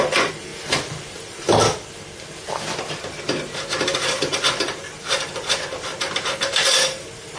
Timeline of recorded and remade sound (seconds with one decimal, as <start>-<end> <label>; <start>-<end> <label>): 0.0-0.5 remade; 0.5-1.1 recorded; 1.1-1.6 remade; 1.6-4.0 recorded; 4.0-5.9 remade; 5.9-6.6 recorded; 6.6-7.4 remade